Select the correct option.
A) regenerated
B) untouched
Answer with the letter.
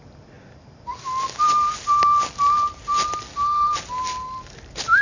B